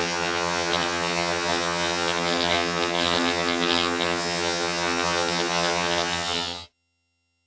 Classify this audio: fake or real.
fake